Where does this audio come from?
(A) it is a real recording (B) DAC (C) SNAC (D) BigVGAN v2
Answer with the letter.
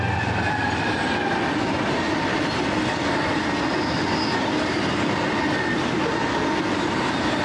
A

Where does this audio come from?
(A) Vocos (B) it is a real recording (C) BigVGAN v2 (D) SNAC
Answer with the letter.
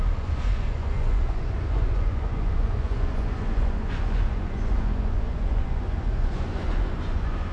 A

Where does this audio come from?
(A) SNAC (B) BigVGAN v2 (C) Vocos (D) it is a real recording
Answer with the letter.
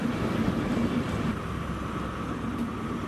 B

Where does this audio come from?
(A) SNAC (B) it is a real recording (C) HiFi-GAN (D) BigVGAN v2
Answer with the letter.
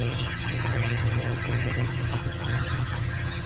C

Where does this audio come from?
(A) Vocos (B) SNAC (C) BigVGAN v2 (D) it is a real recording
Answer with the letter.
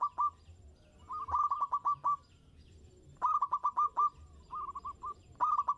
D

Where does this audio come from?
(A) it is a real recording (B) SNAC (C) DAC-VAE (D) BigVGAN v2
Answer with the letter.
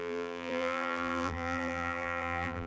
D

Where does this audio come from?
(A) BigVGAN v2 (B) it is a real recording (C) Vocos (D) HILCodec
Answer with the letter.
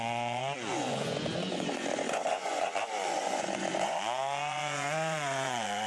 C